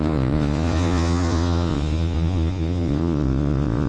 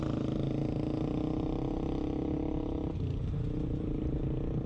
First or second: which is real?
second